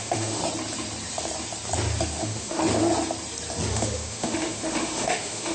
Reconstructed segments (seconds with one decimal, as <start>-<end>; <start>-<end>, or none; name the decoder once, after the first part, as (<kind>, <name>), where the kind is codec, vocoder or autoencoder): 0.0-0.4 (autoencoder, DAC-VAE); 2.2-2.6; 3.7-5.5